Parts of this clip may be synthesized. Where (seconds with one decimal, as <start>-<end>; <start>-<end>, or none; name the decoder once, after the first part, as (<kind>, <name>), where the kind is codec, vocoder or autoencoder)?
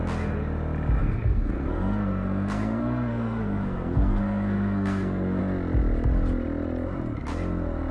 1.0-5.4 (codec, SNAC)